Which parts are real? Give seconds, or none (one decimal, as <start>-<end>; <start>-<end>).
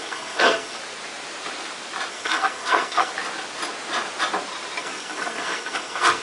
0.8-2.1; 3.1-4.8